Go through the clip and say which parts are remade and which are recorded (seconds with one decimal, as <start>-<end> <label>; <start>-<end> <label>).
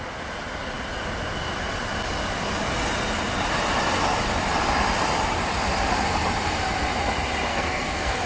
0.0-7.5 recorded; 7.5-8.3 remade